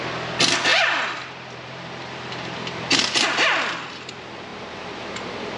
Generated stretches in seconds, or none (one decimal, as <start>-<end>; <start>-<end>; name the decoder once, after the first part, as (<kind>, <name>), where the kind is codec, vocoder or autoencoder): 0.7-4.1 (vocoder, BigVGAN v2)